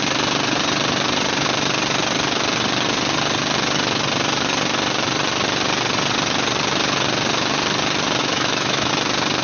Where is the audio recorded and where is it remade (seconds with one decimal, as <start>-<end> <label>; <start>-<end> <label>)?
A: 0.0-8.2 recorded; 8.2-8.9 remade; 8.9-9.4 recorded